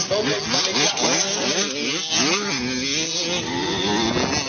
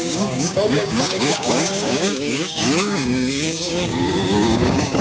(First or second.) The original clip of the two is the first